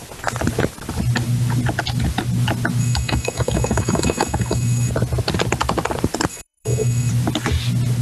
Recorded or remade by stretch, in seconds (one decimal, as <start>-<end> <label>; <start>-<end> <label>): 0.0-2.8 recorded; 2.8-4.9 remade; 4.9-6.3 recorded; 6.3-7.1 remade; 7.1-8.0 recorded